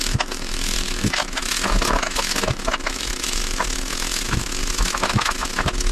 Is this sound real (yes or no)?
no